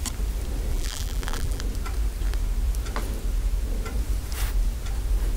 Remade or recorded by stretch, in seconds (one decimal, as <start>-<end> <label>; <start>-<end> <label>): 0.0-0.7 recorded; 0.7-1.6 remade; 1.6-5.4 recorded